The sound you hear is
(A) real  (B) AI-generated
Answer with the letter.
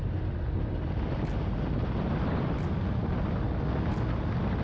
A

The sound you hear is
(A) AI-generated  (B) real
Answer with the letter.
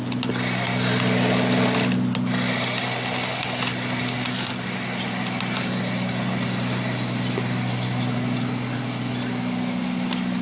B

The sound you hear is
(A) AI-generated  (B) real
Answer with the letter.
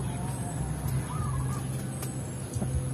B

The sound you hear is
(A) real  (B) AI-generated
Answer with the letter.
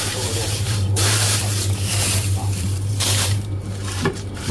B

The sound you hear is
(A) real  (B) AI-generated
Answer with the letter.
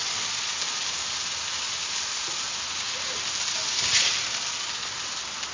A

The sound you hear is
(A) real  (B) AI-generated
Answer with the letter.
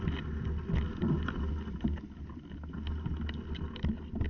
A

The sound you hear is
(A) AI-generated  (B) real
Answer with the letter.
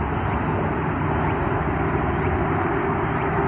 B